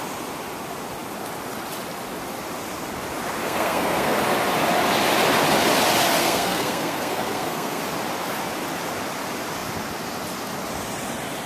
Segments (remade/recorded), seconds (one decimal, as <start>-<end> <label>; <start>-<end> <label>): 0.0-3.4 recorded; 3.4-4.2 remade; 4.2-6.2 recorded; 6.2-7.8 remade; 7.8-11.5 recorded